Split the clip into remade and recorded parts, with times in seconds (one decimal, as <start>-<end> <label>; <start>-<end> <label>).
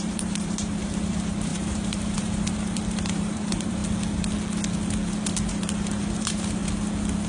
0.0-3.8 remade; 3.8-5.5 recorded; 5.5-6.6 remade; 6.6-7.3 recorded